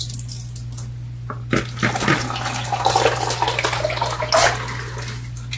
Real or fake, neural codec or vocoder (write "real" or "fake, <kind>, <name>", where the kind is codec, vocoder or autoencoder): real